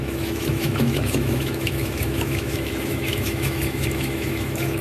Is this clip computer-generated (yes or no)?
yes